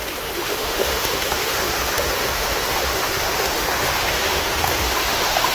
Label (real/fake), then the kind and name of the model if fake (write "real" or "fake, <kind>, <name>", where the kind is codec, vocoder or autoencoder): fake, autoencoder, DAC-VAE